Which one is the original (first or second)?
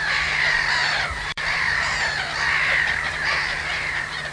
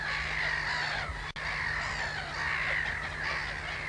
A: second